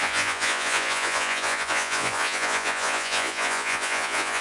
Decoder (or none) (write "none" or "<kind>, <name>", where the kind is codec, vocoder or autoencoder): vocoder, Vocos